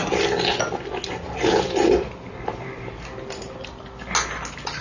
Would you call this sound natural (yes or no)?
yes